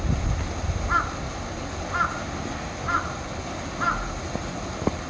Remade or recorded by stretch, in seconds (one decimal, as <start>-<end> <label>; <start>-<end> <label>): 0.0-5.1 recorded